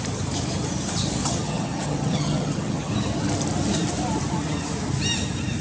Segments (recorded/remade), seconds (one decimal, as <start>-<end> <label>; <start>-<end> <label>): 0.0-1.2 recorded; 1.2-2.9 remade; 2.9-5.6 recorded